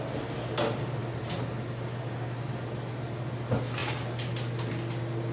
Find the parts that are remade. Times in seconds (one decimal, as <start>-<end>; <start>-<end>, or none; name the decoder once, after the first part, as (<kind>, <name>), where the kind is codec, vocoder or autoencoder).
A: none